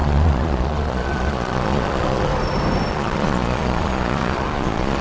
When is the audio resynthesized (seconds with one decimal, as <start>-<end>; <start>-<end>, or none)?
0.0-2.3; 2.9-5.0